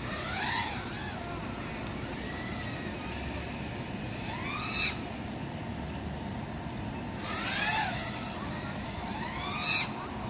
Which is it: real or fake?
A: real